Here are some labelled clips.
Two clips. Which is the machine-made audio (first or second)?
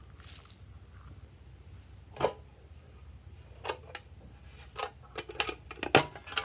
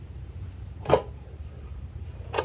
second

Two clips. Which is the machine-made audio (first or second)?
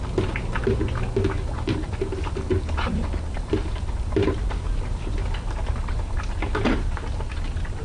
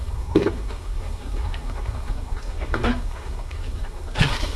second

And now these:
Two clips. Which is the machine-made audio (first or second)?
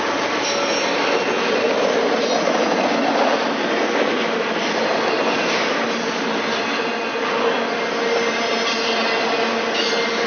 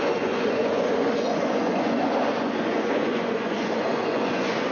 second